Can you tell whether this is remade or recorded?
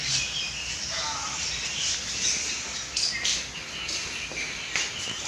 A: recorded